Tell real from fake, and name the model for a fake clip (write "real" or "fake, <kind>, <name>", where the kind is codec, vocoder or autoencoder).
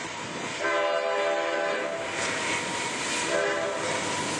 real